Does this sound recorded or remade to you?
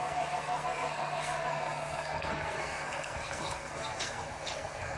remade